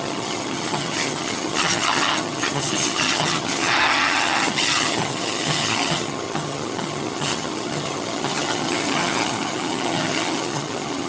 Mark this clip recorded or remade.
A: remade